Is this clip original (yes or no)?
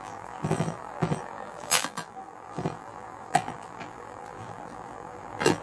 no